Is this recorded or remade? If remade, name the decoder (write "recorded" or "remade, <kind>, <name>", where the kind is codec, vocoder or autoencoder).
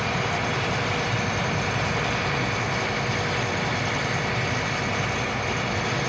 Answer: recorded